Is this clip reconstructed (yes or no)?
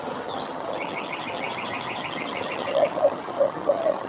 yes